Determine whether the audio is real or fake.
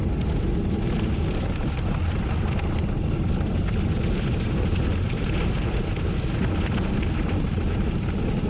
real